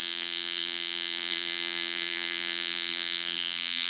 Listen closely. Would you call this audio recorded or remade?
remade